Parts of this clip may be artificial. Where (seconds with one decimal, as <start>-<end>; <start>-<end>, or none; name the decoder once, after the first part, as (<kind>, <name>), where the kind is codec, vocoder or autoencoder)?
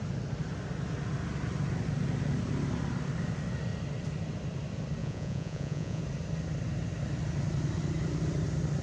5.0-6.0 (vocoder, Vocos)